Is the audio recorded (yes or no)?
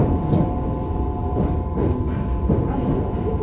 yes